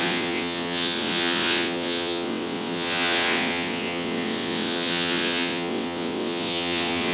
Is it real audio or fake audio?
fake